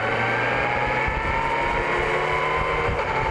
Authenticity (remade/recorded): recorded